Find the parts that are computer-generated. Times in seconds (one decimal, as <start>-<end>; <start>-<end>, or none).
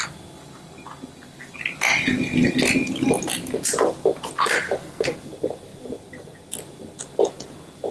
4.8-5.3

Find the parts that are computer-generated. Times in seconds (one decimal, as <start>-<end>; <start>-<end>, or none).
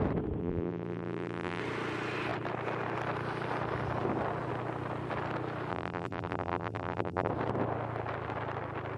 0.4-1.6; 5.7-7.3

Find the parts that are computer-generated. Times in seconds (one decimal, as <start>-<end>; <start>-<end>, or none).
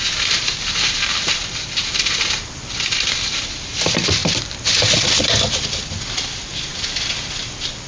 0.0-4.2; 5.2-7.9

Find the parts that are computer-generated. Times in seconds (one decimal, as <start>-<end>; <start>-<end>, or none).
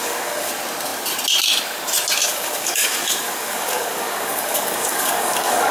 0.0-0.5; 2.2-5.7